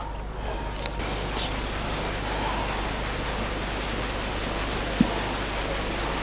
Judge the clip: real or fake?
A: real